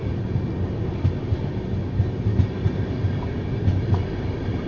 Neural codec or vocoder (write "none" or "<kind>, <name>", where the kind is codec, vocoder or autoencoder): none